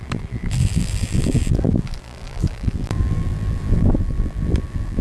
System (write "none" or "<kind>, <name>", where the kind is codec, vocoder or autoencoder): vocoder, BigVGAN v2